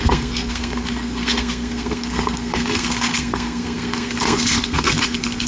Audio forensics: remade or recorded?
remade